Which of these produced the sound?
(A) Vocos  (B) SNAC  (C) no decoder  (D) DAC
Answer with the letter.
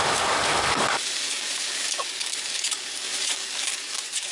D